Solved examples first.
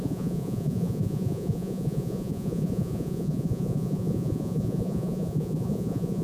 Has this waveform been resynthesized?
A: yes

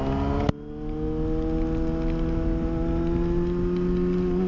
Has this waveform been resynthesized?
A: no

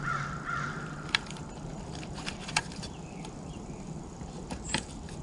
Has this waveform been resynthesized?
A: yes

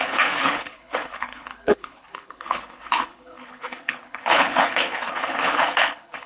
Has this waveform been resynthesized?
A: yes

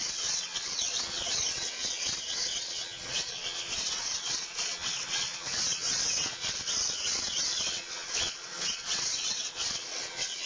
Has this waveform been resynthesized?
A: yes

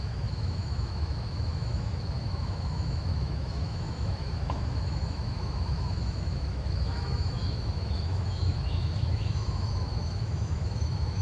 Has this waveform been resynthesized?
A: yes